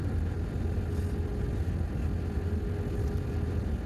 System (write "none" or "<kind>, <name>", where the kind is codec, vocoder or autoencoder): none